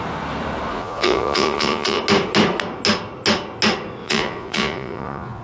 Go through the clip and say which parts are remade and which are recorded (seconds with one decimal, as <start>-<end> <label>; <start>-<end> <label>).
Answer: 0.0-0.7 recorded; 0.7-2.0 remade; 2.0-4.0 recorded; 4.0-5.4 remade